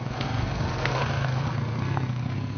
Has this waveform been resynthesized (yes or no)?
yes